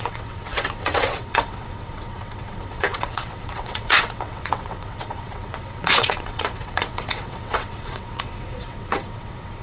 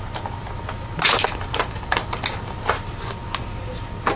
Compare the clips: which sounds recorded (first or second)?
second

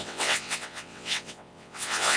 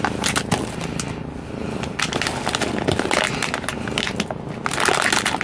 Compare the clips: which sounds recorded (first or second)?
second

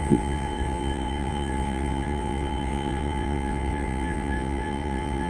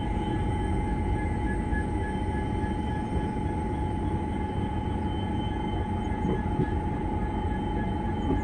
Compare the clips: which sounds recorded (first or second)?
second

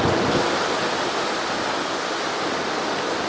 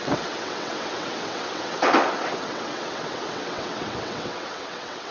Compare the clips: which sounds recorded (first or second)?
first